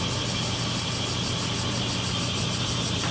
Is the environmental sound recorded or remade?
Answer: recorded